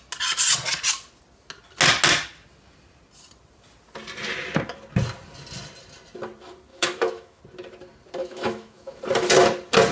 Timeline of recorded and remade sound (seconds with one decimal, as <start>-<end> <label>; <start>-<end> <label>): 0.0-6.7 recorded; 6.7-7.4 remade; 7.4-8.2 recorded; 8.2-9.0 remade; 9.0-9.9 recorded